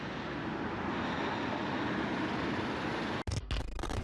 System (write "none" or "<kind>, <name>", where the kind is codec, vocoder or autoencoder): none